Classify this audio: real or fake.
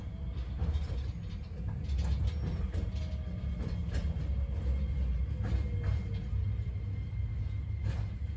real